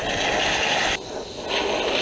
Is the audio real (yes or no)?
yes